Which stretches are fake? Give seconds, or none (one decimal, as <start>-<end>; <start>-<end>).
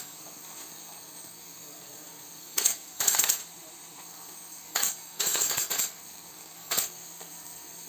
0.0-3.4; 4.0-7.9